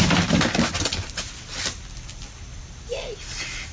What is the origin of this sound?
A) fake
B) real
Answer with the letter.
B